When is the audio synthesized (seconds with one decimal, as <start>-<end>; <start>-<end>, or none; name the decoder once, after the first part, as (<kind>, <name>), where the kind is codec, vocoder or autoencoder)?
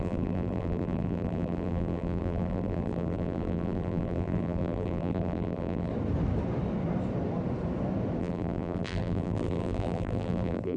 0.0-5.9 (vocoder, BigVGAN v2); 8.2-10.8